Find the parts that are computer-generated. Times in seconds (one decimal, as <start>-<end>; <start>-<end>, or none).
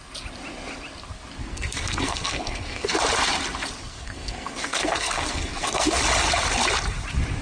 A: 1.4-3.0; 3.8-6.0